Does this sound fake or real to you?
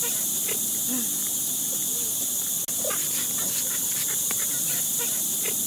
real